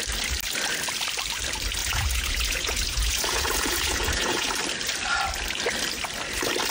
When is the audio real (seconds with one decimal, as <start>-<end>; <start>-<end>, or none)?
0.0-1.8; 4.5-6.7